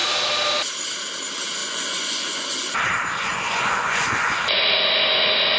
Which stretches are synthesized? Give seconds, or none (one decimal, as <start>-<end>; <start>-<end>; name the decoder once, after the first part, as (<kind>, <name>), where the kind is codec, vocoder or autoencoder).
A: 1.6-2.8 (vocoder, Vocos); 3.2-4.6